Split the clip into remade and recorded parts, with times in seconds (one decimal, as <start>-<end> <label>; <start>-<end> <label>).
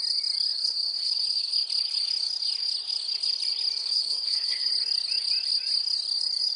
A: 0.0-0.5 recorded; 0.5-1.5 remade; 1.5-3.8 recorded; 3.8-4.7 remade; 4.7-6.6 recorded